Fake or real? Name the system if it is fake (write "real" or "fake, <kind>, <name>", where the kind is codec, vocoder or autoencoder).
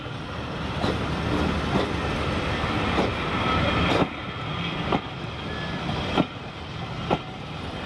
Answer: real